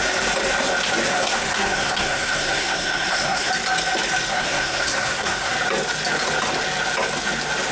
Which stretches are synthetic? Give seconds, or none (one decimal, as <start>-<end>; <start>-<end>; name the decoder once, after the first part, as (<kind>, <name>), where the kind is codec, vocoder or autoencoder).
1.1-3.5 (codec, SNAC); 4.3-5.5